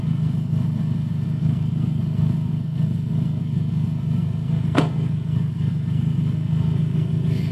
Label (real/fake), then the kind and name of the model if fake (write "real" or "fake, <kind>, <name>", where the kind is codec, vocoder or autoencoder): fake, codec, SNAC